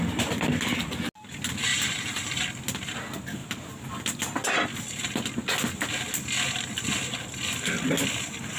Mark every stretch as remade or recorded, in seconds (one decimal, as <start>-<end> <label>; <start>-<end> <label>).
0.0-1.7 recorded; 1.7-2.4 remade; 2.4-8.6 recorded